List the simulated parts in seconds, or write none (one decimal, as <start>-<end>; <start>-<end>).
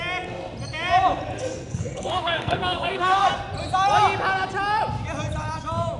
1.4-3.3